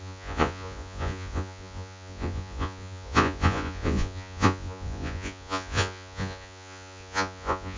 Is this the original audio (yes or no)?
no